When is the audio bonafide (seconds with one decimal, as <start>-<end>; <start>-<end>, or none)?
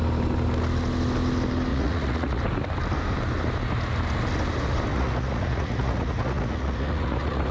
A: 0.0-1.7; 2.4-4.9